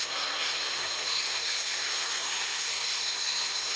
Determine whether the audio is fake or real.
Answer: fake